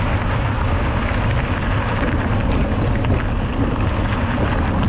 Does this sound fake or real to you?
real